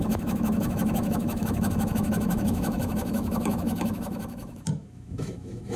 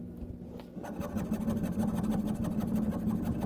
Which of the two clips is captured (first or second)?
second